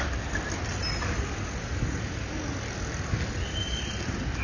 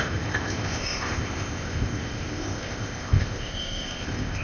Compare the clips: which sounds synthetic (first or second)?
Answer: second